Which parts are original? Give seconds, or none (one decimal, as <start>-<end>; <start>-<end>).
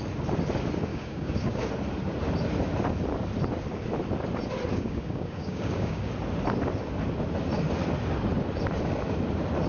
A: 0.0-0.9; 1.6-4.7; 6.1-9.7